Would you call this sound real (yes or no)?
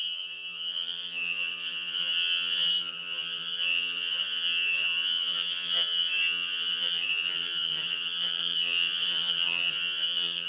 no